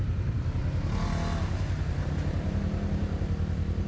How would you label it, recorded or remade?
recorded